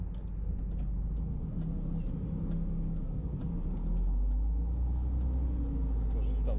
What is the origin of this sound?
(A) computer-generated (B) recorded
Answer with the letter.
B